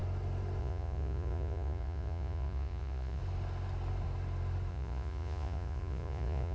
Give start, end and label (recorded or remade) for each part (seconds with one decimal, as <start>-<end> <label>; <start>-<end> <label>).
0.0-0.6 recorded; 0.6-3.2 remade; 3.2-4.7 recorded; 4.7-6.5 remade